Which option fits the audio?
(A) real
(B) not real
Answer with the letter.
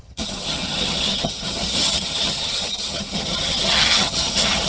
B